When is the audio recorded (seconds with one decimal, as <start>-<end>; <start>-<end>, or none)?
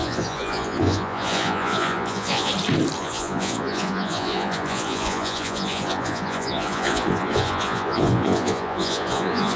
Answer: 2.5-3.0